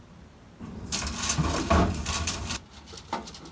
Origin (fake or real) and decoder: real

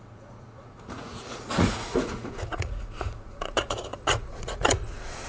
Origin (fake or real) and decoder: fake, vocoder, Vocos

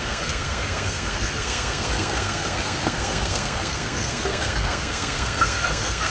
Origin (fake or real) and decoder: fake, codec, SNAC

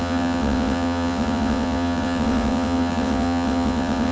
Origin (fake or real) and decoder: fake, vocoder, WaveNeXt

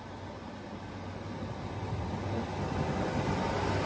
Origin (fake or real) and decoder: real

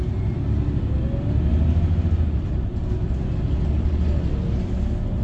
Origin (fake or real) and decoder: real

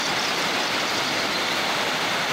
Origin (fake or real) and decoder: fake, vocoder, BigVGAN v2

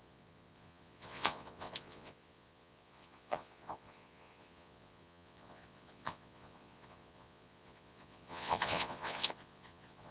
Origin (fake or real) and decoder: fake, vocoder, Vocos